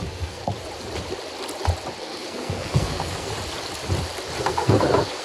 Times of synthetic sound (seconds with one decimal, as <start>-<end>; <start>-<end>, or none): 0.0-0.4; 2.0-3.3; 4.4-5.2